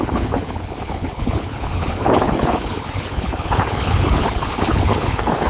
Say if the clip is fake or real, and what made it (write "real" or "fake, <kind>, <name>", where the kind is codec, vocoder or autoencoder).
fake, codec, HILCodec